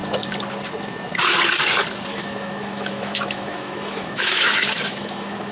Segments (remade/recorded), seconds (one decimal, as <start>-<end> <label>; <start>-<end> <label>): 0.0-2.1 recorded; 2.1-5.5 remade